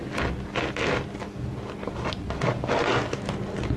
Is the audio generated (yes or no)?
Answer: no